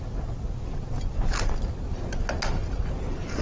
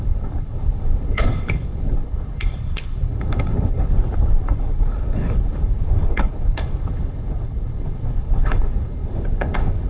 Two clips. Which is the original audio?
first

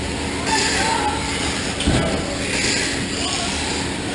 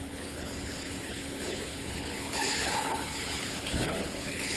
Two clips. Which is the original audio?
first